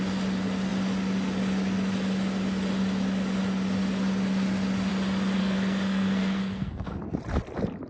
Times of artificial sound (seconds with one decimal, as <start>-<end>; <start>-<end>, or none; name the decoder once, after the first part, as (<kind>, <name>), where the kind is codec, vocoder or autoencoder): 5.4-7.2 (codec, SNAC)